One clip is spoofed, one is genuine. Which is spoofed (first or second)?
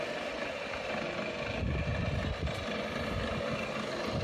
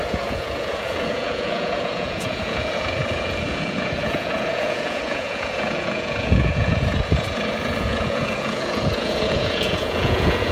second